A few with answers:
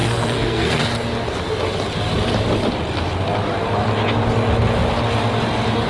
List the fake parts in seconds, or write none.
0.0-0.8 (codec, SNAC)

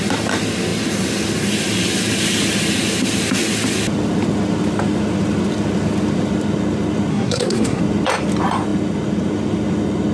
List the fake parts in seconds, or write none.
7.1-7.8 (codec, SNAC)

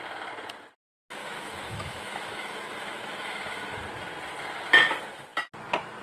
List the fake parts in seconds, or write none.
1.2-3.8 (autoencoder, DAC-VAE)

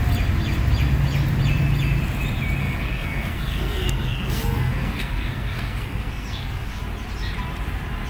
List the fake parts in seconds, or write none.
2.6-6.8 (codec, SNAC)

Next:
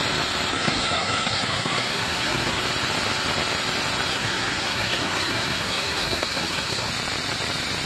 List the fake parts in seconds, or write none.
0.5-2.6 (codec, SNAC); 4.1-6.9